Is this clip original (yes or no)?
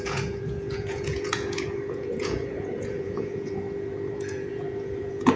no